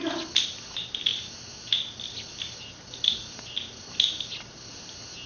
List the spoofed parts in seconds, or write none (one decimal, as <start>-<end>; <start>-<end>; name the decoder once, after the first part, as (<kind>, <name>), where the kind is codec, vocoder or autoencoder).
none

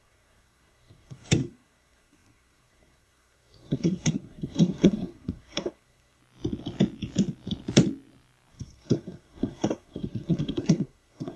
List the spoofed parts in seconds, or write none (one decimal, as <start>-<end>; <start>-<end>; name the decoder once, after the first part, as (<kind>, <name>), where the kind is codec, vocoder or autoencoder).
0.0-6.2 (codec, SNAC); 8.5-11.4

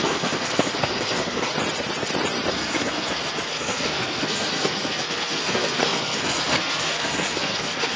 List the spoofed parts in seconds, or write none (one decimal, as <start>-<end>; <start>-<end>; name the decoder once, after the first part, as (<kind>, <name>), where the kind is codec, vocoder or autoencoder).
0.0-1.5 (codec, SNAC); 2.5-8.0